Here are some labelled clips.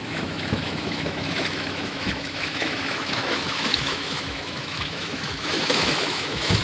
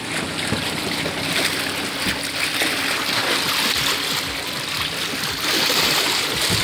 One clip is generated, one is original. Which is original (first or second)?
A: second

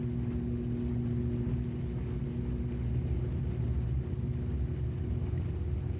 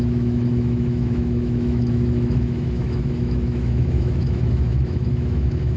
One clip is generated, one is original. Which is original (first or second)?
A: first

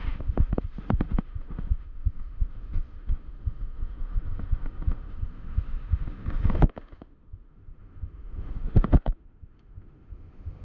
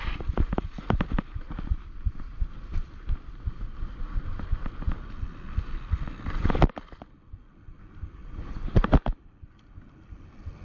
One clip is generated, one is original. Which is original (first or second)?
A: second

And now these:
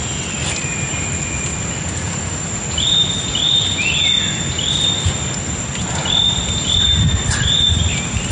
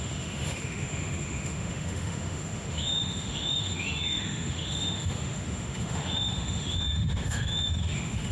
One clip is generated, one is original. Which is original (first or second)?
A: first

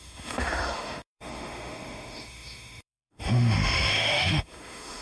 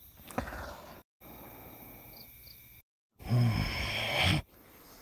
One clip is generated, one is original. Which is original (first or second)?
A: second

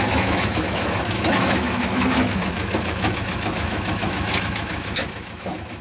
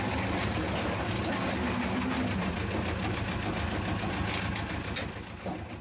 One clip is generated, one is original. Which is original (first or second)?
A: second